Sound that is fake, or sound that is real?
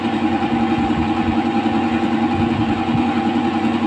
fake